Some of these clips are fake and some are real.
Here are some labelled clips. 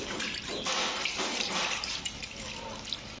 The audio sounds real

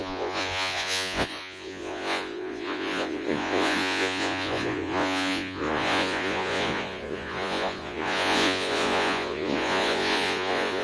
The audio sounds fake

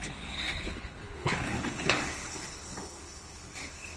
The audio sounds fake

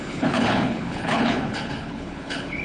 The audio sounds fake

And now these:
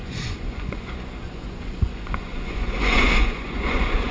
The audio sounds fake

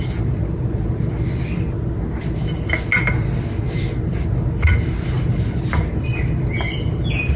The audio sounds real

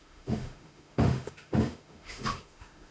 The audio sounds fake